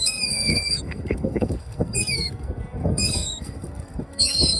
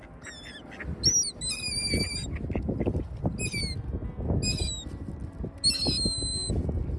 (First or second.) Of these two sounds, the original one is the second